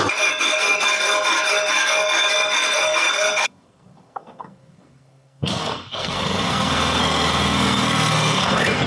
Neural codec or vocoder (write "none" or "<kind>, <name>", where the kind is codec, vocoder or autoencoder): codec, SNAC